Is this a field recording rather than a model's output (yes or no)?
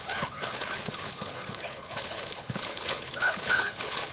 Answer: no